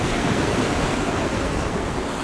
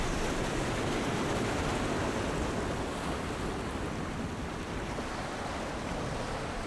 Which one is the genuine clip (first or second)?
second